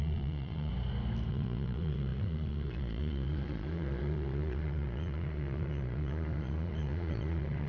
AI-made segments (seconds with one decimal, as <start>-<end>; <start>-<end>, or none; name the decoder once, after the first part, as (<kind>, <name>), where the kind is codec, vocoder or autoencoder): 0.0-0.7 (vocoder, Vocos); 1.3-7.7